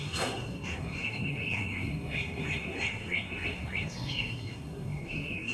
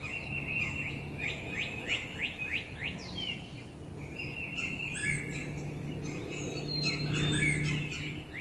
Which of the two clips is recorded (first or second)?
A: second